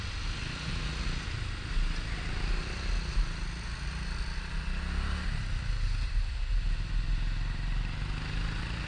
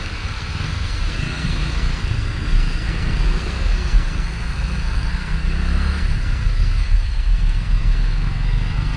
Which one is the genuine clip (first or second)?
first